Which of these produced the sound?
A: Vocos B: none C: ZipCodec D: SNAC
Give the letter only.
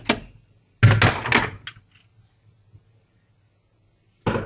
B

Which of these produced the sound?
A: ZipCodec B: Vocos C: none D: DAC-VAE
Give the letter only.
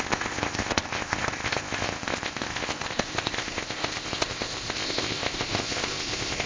A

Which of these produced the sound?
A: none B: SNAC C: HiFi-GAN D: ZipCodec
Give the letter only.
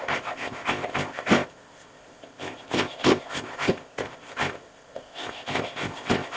D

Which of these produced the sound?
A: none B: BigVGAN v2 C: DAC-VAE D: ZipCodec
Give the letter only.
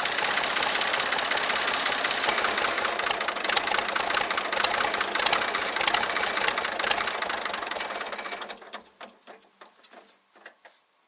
A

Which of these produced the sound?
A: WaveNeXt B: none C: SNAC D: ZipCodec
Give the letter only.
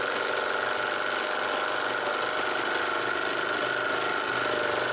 B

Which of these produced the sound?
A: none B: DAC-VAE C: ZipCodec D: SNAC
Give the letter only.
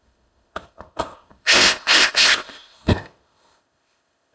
C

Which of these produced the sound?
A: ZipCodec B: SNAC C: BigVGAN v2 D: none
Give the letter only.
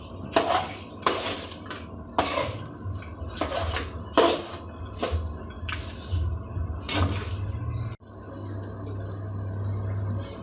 D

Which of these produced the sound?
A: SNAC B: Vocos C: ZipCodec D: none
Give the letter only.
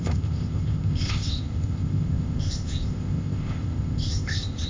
C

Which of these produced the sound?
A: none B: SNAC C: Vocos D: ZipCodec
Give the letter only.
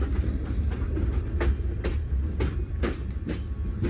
A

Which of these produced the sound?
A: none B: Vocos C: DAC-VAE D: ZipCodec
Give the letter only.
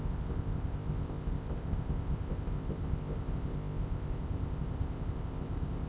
D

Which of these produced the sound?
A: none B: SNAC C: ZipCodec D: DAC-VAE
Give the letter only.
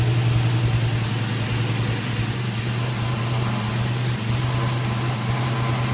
A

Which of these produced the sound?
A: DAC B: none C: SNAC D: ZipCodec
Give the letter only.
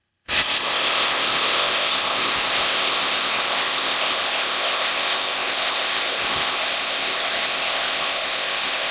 D